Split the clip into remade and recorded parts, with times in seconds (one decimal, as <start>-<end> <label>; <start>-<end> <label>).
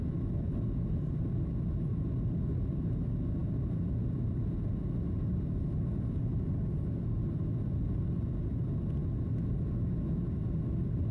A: 0.0-11.1 recorded